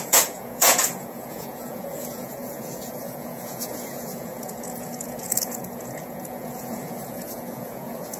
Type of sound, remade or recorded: remade